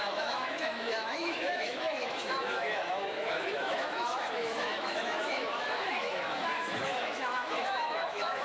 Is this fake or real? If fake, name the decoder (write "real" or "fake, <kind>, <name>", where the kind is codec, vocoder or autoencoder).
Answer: fake, autoencoder, DAC-VAE